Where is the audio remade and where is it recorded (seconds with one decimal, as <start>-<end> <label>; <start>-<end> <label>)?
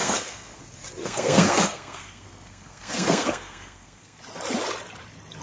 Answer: 0.0-0.6 remade; 0.6-1.0 recorded; 1.0-4.2 remade; 4.2-5.4 recorded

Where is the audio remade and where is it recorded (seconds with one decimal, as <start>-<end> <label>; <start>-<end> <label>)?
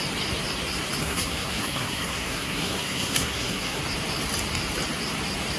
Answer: 0.0-1.0 recorded; 1.0-3.8 remade; 3.8-5.6 recorded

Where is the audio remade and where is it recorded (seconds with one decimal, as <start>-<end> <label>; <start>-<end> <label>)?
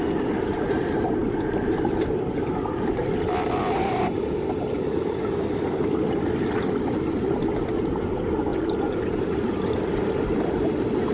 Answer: 0.0-8.5 recorded; 8.5-9.0 remade; 9.0-11.1 recorded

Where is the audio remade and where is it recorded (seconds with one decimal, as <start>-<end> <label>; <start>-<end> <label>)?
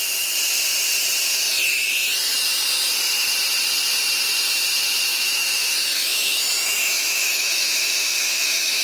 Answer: 0.0-5.1 recorded; 5.1-8.8 remade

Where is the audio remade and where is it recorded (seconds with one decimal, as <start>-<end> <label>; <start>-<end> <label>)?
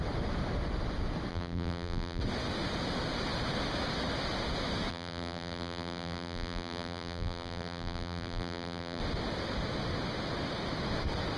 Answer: 0.0-1.3 recorded; 1.3-2.2 remade; 2.2-4.9 recorded; 4.9-9.0 remade; 9.0-11.4 recorded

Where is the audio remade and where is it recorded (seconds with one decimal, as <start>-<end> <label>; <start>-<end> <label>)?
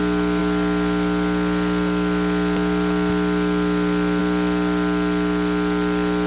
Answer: 0.0-6.3 recorded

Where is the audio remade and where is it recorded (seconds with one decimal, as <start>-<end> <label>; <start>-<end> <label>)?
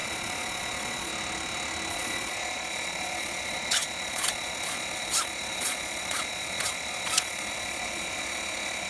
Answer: 0.0-1.1 remade; 1.1-1.9 recorded; 1.9-8.9 remade